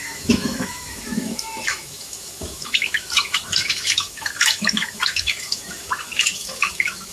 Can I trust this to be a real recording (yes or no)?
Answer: no